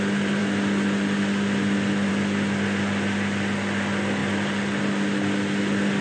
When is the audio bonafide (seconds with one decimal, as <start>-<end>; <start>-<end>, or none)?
0.0-6.0